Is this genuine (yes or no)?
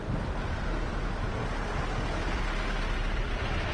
yes